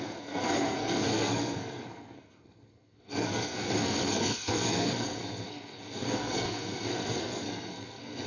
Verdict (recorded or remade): remade